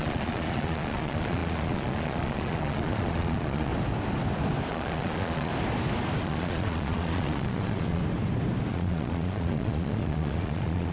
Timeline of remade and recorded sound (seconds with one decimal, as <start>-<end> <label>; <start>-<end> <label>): 0.0-3.7 remade; 3.7-4.7 recorded; 4.7-5.5 remade; 5.5-6.2 recorded; 6.2-8.0 remade; 8.0-8.7 recorded; 8.7-10.9 remade